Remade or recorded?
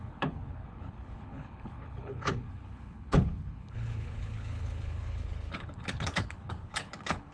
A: remade